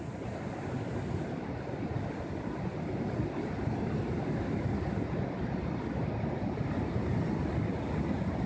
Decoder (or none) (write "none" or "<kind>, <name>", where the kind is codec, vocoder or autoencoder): none